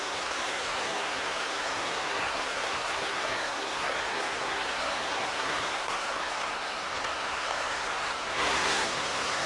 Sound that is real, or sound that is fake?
fake